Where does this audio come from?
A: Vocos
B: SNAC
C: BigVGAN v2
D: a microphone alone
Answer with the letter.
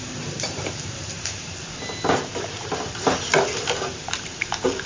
C